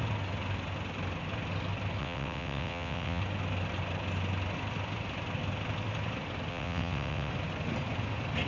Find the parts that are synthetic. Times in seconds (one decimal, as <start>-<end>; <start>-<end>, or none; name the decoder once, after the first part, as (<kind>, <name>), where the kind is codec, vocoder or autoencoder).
2.0-3.2 (vocoder, WaveNeXt); 6.5-7.3